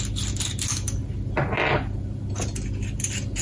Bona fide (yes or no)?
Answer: yes